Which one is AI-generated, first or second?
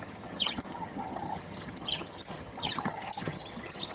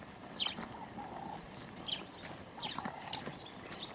first